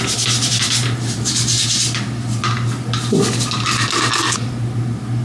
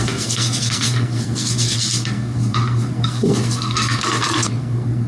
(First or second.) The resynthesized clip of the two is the second